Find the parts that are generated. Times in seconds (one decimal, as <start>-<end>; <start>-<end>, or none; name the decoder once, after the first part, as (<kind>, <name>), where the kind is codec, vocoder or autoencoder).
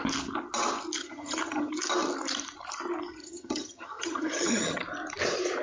1.0-1.7 (vocoder, HiFi-GAN); 3.2-4.8